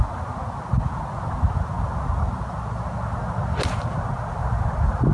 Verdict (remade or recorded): recorded